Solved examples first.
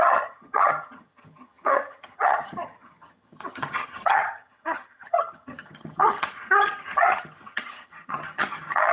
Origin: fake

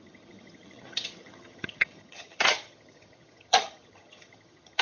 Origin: fake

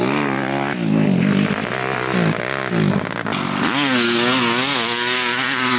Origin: real